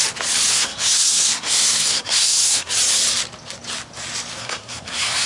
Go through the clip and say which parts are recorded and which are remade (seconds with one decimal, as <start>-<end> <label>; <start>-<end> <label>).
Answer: 0.0-0.5 recorded; 0.5-2.7 remade; 2.7-4.4 recorded; 4.4-5.3 remade